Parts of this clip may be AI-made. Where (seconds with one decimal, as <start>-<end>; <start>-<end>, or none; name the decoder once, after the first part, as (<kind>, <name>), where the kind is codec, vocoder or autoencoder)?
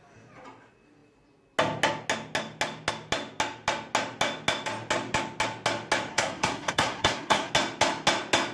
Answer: 6.1-7.5 (codec, SNAC)